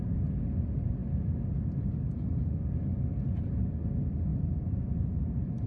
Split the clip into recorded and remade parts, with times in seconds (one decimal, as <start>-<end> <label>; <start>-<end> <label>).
0.0-2.9 recorded; 2.9-3.7 remade; 3.7-4.3 recorded; 4.3-5.3 remade; 5.3-5.7 recorded